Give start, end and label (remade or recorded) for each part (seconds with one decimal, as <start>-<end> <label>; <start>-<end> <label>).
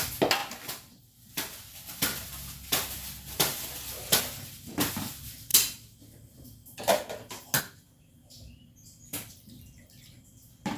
0.0-10.8 recorded